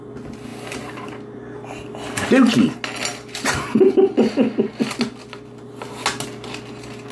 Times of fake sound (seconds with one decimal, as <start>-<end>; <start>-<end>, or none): none